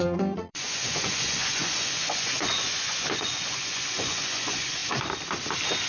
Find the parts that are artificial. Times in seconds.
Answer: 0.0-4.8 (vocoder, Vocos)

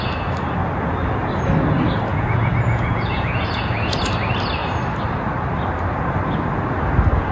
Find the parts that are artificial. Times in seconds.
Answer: 2.1-4.0 (vocoder, Vocos)

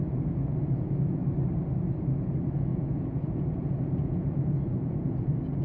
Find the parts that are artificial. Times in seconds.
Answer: 0.0-1.2 (vocoder, Vocos); 1.7-5.6

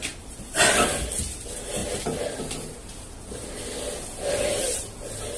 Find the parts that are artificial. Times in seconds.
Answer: none

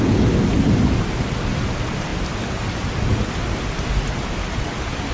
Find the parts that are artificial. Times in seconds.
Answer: none